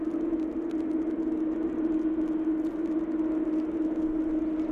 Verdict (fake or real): real